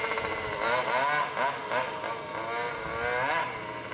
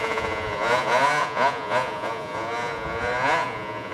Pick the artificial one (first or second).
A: second